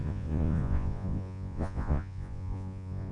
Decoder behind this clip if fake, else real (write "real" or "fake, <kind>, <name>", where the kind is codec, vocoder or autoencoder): fake, vocoder, Vocos